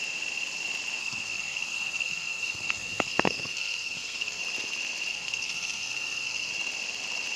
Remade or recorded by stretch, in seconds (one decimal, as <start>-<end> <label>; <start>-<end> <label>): 0.0-1.0 recorded; 1.0-4.4 remade; 4.4-5.1 recorded; 5.1-6.5 remade; 6.5-7.4 recorded